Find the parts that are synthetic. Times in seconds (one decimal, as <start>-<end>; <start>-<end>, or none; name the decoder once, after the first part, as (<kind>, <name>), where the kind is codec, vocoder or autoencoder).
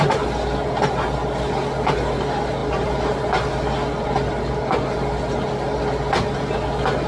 none